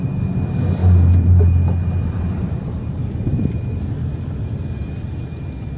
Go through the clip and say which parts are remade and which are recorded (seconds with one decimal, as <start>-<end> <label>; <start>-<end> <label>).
0.0-5.8 recorded

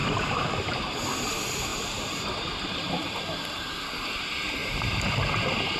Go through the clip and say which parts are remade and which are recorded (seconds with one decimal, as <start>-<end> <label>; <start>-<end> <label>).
0.0-0.8 remade; 0.8-1.7 recorded; 1.7-3.4 remade; 3.4-4.6 recorded; 4.6-5.2 remade; 5.2-5.8 recorded

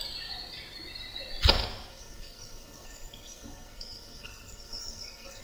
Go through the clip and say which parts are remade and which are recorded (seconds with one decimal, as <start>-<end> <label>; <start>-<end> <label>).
0.0-1.9 recorded; 1.9-5.4 remade

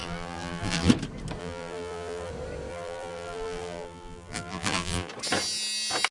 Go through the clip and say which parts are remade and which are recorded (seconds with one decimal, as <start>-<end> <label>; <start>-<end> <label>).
0.0-0.9 remade; 0.9-1.4 recorded; 1.4-2.3 remade; 2.3-2.7 recorded; 2.7-5.1 remade; 5.1-6.1 recorded

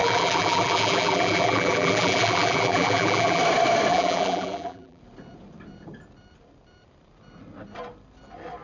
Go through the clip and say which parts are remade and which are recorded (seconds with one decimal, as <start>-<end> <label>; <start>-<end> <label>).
0.0-3.4 remade; 3.4-3.9 recorded; 3.9-5.0 remade; 5.0-8.6 recorded